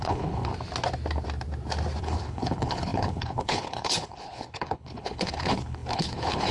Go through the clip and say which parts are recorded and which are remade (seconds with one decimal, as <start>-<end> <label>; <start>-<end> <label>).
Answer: 0.0-0.5 remade; 0.5-2.0 recorded; 2.0-6.5 remade